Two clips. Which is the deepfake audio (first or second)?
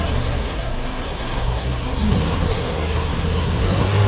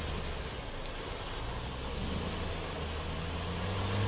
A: first